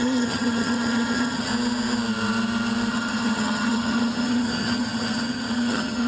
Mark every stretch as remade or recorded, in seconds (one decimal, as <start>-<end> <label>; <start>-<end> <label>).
0.0-1.5 remade; 1.5-2.9 recorded; 2.9-6.1 remade